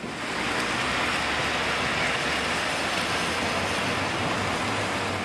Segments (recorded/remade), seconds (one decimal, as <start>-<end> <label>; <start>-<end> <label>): 0.0-5.2 recorded